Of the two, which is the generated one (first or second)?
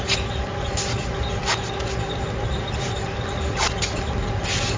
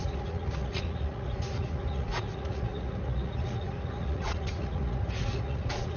second